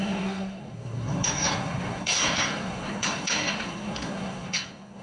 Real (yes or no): no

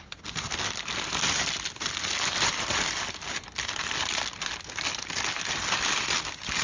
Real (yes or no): yes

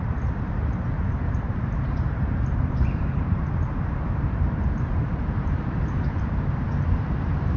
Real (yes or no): no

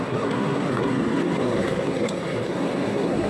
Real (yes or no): no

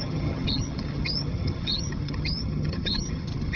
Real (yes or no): no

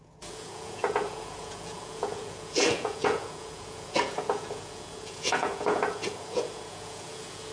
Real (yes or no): no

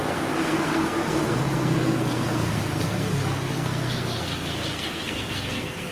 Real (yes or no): no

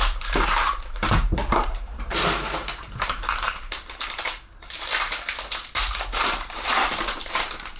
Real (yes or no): no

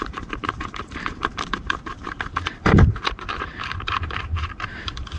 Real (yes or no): no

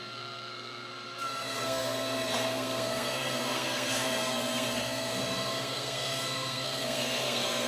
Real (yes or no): no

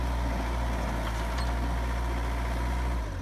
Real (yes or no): yes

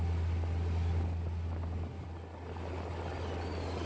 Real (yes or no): yes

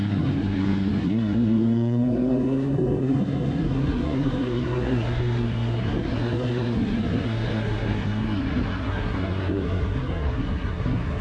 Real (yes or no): no